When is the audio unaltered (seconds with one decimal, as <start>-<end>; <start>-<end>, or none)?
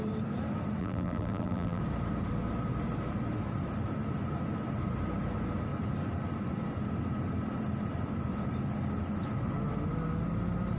0.0-0.8; 1.8-10.8